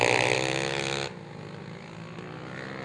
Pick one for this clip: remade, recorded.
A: recorded